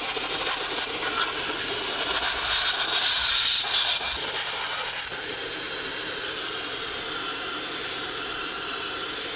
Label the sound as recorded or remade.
recorded